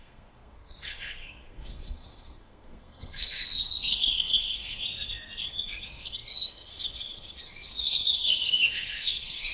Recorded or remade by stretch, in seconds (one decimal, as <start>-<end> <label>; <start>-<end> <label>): 0.0-9.5 remade